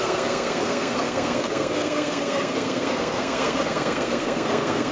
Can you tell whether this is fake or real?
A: fake